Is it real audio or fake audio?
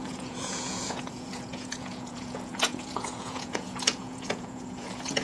fake